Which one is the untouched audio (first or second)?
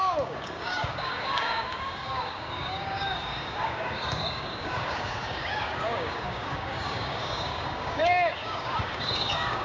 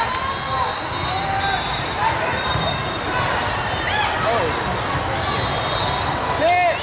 second